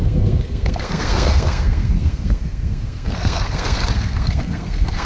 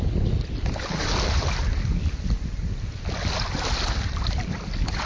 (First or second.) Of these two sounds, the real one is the second